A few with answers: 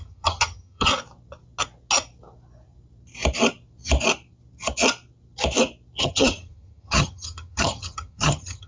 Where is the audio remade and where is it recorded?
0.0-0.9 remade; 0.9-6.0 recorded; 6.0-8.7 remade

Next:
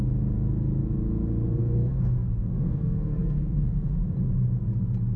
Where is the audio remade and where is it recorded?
0.0-1.6 recorded; 1.6-3.9 remade; 3.9-5.2 recorded

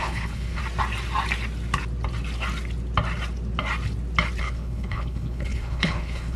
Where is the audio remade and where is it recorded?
0.0-0.6 remade; 0.6-4.4 recorded; 4.4-6.4 remade

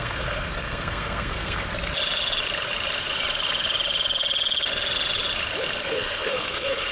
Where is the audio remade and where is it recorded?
0.0-1.7 remade; 1.7-5.8 recorded; 5.8-6.9 remade

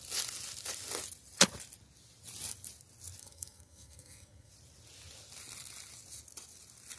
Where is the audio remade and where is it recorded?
0.0-3.2 recorded; 3.2-4.5 remade; 4.5-7.0 recorded